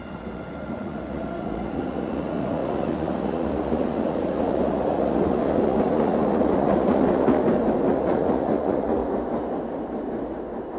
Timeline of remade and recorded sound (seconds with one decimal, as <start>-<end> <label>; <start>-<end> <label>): 0.0-7.4 remade; 7.4-7.9 recorded; 7.9-9.0 remade; 9.0-10.8 recorded